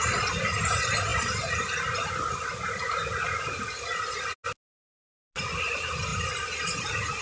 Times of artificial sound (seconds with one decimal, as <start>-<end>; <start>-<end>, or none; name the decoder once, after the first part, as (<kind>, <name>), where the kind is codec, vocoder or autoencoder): none